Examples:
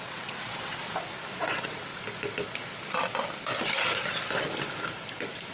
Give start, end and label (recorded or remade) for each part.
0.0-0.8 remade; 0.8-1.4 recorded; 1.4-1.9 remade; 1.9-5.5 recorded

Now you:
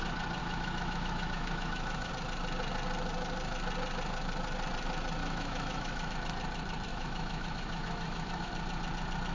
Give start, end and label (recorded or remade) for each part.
0.0-0.4 recorded; 0.4-2.1 remade; 2.1-5.2 recorded; 5.2-6.1 remade; 6.1-6.9 recorded; 6.9-8.5 remade; 8.5-9.3 recorded

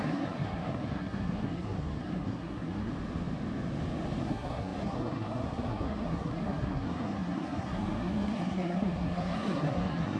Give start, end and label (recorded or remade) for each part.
0.0-2.9 remade; 2.9-4.2 recorded; 4.2-10.2 remade

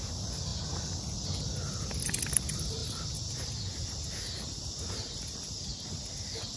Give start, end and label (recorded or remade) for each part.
0.0-0.5 remade; 0.5-2.3 recorded; 2.3-2.8 remade; 2.8-5.2 recorded; 5.2-5.7 remade; 5.7-6.6 recorded